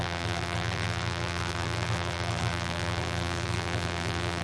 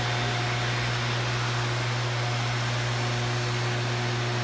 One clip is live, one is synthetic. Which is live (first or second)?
second